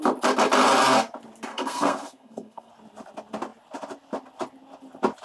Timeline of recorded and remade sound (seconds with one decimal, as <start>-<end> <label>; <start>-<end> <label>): 0.0-1.5 recorded; 1.5-2.7 remade; 2.7-5.2 recorded